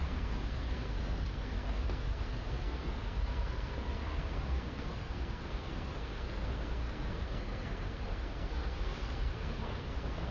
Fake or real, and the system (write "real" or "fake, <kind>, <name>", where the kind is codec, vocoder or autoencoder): fake, codec, SNAC